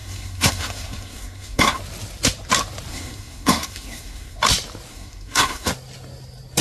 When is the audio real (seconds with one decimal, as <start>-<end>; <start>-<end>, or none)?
1.8-2.9; 4.4-4.9; 5.7-6.6